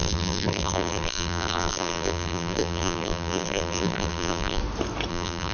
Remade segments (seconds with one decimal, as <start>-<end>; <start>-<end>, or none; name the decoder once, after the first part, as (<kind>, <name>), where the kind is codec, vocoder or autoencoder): 0.0-4.6 (vocoder, BigVGAN v2); 5.1-5.5